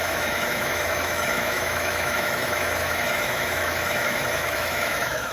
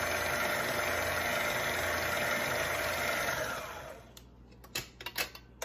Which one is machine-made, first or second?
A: first